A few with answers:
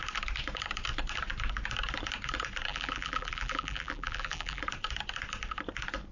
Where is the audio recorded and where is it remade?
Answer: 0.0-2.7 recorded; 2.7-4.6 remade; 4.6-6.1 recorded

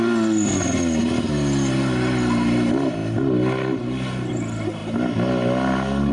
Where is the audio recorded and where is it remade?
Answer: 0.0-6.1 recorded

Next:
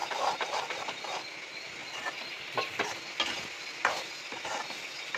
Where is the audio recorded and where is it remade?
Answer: 0.0-0.9 remade; 0.9-5.2 recorded

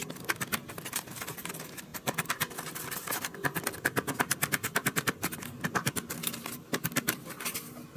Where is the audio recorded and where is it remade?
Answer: 0.0-8.0 recorded

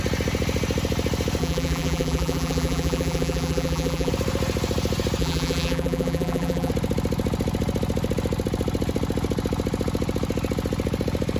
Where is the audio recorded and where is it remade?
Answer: 0.0-1.4 recorded; 1.4-4.1 remade; 4.1-5.2 recorded; 5.2-6.7 remade; 6.7-11.4 recorded

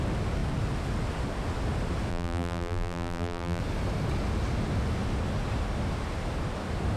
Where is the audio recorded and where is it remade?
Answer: 0.0-2.1 recorded; 2.1-3.6 remade; 3.6-7.0 recorded

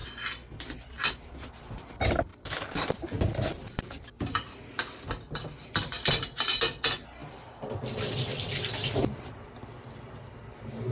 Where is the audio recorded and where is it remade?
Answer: 0.0-2.3 recorded; 2.3-6.2 remade; 6.2-7.2 recorded; 7.2-9.5 remade; 9.5-10.9 recorded

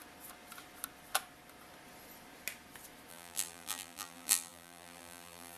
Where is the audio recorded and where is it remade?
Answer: 0.0-3.1 recorded; 3.1-5.6 remade